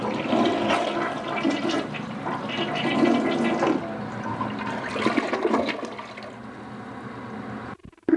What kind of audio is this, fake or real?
real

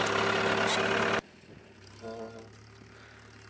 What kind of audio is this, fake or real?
real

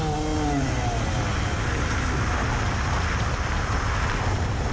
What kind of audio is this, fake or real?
real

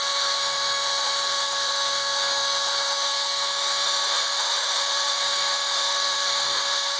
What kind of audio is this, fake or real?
fake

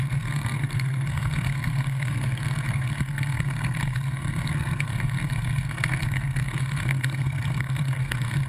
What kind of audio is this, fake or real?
fake